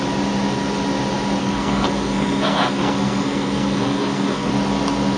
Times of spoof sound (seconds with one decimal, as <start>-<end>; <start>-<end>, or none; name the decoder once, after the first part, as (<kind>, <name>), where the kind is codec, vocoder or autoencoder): 1.4-4.5 (codec, SNAC)